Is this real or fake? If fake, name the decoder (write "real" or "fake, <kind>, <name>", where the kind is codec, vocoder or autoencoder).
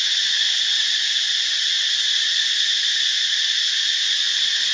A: real